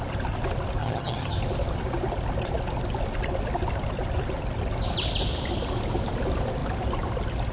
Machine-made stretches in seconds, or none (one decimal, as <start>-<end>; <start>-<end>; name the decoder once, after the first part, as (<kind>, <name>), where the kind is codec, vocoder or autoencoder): 0.8-1.4 (vocoder, HiFi-GAN)